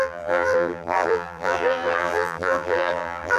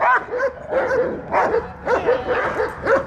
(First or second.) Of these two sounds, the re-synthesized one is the first